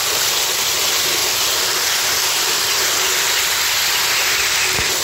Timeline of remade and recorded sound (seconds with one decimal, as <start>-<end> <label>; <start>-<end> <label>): 0.0-5.0 recorded

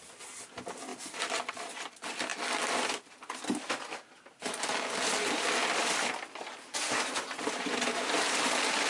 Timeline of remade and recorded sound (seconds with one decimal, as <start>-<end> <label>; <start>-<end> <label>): 0.0-8.9 recorded

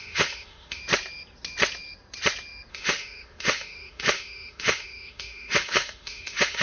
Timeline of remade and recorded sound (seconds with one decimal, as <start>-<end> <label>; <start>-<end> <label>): 0.0-0.8 remade; 0.8-2.7 recorded; 2.7-6.6 remade

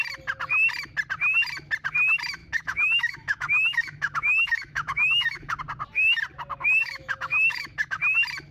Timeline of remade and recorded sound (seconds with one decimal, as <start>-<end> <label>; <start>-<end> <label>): 0.0-2.4 recorded; 2.4-5.6 remade; 5.6-6.8 recorded; 6.8-8.0 remade; 8.0-8.5 recorded

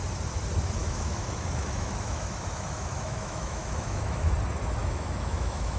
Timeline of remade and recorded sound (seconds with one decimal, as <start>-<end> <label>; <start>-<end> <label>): 0.0-0.8 recorded; 0.8-4.3 remade; 4.3-4.8 recorded; 4.8-5.8 remade